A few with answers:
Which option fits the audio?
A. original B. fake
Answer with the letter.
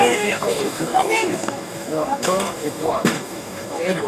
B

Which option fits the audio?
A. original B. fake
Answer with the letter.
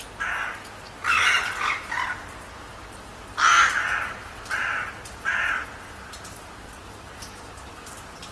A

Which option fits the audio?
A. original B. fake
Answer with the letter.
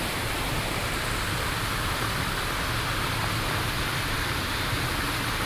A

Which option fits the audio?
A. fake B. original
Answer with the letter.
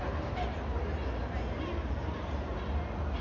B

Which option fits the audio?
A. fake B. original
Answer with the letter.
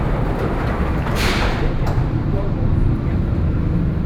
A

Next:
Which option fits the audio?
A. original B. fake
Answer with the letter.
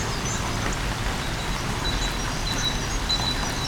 A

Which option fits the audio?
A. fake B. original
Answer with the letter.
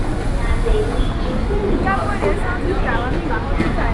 B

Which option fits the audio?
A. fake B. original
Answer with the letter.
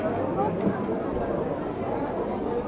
B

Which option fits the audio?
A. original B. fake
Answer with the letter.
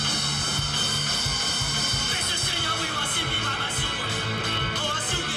A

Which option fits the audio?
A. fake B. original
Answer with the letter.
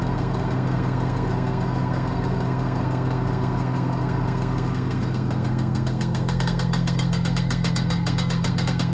A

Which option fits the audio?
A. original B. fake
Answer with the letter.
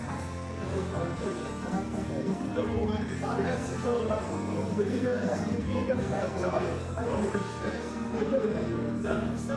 B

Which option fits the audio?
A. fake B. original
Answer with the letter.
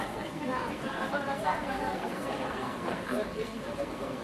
A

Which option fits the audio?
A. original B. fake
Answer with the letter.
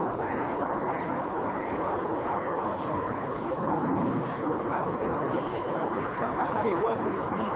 B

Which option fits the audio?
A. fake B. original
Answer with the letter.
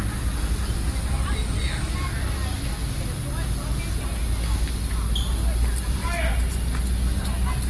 B